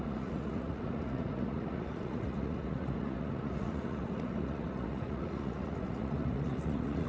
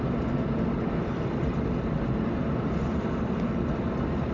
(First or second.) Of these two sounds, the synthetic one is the first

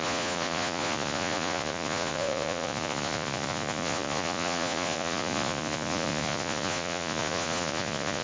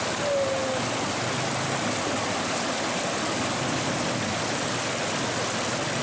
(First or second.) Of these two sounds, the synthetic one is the first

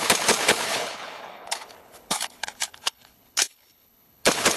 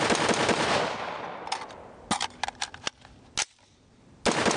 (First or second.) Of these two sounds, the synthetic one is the first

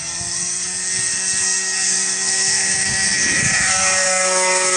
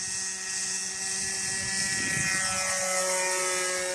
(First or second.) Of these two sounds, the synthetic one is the first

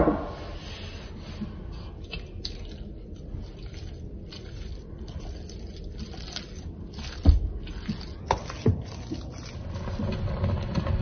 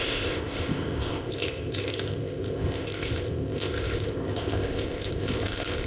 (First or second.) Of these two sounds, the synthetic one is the second